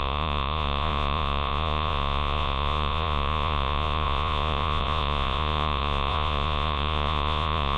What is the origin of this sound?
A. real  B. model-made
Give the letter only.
B